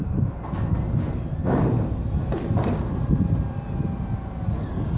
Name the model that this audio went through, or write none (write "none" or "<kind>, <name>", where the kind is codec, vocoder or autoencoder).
none